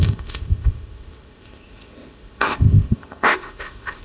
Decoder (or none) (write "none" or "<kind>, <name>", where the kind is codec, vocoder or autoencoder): codec, ZipCodec